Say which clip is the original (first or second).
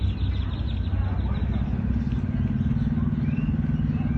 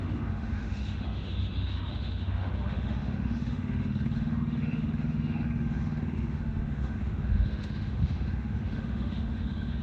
first